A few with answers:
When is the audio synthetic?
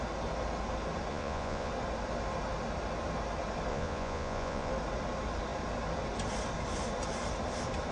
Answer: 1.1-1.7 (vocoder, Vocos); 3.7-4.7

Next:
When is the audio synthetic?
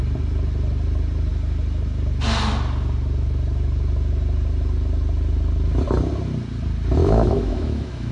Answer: 7.0-8.1 (autoencoder, DAC-VAE)